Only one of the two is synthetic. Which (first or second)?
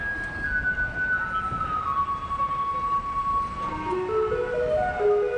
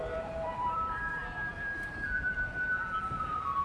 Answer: second